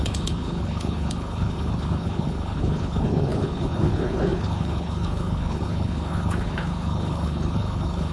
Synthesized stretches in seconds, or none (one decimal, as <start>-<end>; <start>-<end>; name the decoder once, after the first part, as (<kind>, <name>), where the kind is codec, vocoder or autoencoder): 0.0-8.1 (codec, HILCodec)